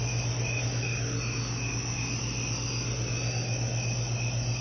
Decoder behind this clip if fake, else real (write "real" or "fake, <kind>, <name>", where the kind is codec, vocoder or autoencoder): real